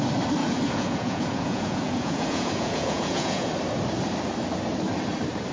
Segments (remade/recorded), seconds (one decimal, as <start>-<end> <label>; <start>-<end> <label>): 0.0-0.4 recorded; 0.4-3.5 remade; 3.5-5.5 recorded